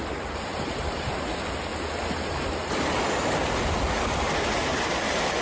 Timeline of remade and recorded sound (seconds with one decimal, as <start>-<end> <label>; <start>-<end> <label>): 0.0-5.4 recorded